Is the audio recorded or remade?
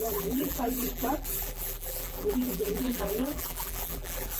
remade